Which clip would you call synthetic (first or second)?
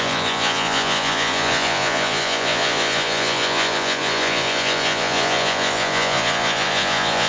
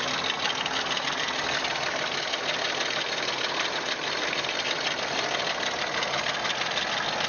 first